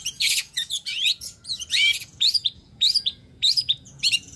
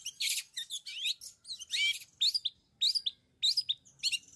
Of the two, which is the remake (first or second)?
first